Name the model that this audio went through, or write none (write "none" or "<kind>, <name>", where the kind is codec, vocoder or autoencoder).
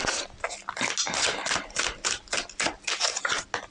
none